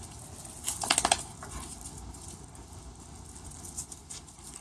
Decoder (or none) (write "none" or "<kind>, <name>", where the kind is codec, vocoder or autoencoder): none